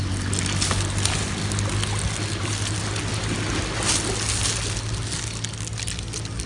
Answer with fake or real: real